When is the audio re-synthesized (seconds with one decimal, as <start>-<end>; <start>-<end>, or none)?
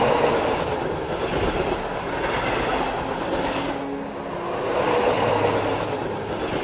none